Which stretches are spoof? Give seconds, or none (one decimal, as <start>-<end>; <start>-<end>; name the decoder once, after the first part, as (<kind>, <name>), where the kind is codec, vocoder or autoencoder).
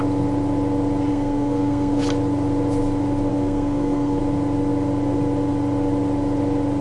1.1-2.0 (codec, SNAC); 3.3-4.2